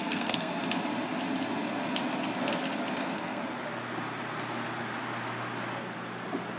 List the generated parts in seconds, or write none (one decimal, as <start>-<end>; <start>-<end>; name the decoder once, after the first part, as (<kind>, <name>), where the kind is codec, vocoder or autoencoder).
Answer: 0.0-0.6 (codec, SNAC); 3.0-3.4